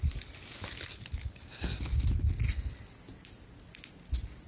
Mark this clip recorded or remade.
recorded